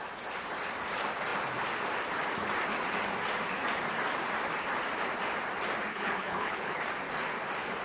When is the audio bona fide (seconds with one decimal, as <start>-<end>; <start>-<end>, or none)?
0.0-5.9; 6.8-7.8